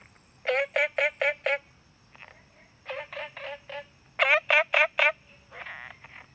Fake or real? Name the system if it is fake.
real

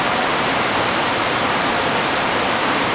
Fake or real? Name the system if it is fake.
fake, vocoder, BigVGAN v2